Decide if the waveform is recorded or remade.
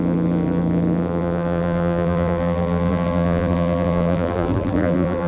remade